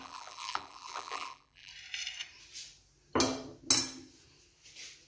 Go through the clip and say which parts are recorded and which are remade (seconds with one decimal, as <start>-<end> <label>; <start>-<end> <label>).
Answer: 0.0-1.7 remade; 1.7-5.1 recorded